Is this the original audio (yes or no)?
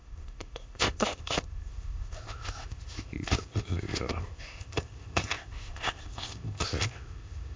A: no